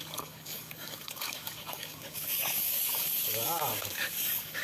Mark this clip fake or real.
fake